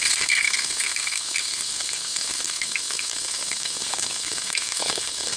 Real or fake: fake